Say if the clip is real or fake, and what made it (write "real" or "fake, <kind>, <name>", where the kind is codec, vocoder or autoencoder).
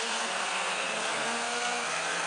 fake, codec, SNAC